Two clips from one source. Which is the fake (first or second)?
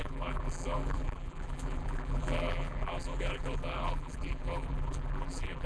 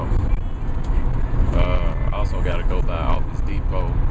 first